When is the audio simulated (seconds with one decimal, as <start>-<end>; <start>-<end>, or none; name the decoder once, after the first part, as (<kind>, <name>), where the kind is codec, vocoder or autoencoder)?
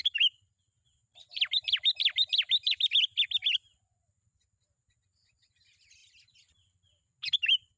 none